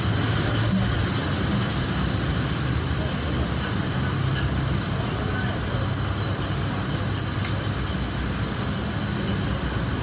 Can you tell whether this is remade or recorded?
recorded